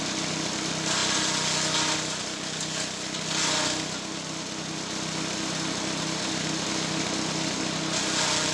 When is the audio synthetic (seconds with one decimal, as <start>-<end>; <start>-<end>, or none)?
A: none